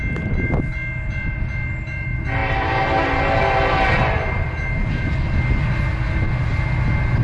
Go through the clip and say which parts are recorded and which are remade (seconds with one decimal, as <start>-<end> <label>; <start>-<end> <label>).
0.0-7.2 recorded